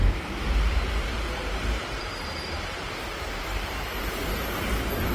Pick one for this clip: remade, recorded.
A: remade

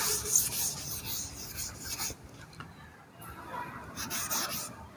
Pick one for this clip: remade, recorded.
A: recorded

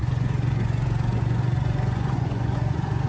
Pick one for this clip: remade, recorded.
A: remade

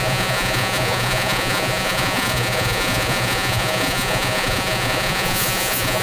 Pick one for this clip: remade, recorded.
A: remade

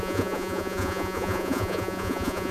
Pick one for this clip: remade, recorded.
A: remade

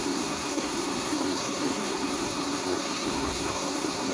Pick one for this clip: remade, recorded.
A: remade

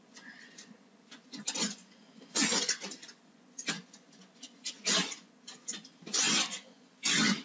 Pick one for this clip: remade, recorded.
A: remade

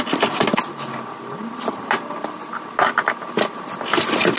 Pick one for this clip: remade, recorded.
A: recorded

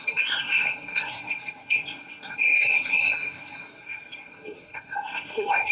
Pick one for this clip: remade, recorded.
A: remade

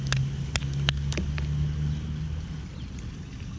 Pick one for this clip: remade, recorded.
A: recorded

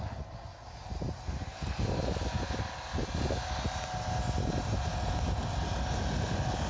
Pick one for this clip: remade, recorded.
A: recorded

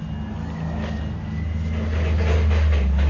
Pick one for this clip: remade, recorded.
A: recorded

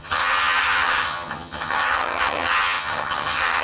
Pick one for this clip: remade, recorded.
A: remade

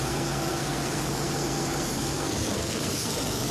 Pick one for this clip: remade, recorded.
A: remade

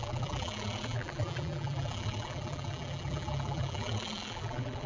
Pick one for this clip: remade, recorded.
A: remade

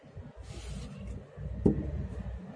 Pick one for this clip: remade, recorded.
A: recorded